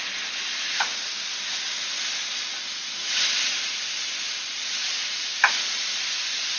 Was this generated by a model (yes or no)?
no